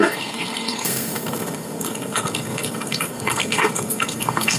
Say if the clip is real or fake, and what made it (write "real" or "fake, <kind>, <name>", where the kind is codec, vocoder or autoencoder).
fake, codec, SNAC